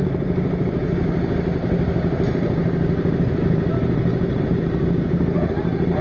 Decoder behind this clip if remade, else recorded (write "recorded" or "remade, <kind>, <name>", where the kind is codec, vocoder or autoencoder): recorded